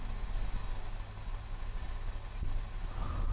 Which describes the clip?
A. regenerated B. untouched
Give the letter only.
B